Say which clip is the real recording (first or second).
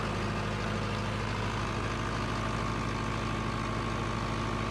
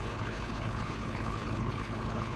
first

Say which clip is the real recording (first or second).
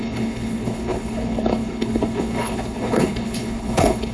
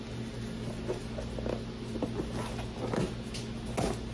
second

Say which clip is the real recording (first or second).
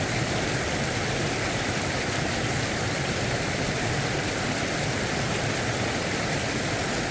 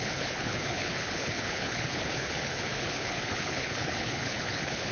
first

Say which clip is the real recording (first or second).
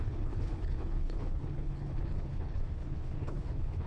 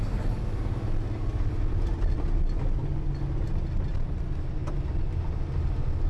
second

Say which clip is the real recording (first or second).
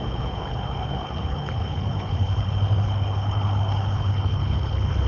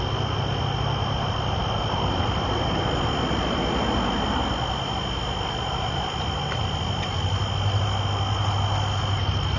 second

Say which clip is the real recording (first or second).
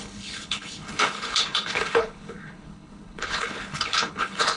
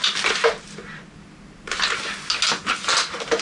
second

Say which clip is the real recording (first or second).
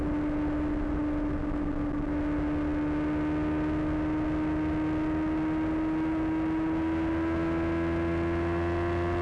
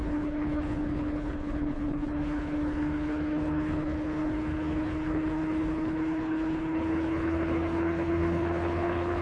first